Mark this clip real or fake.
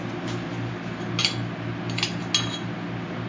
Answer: real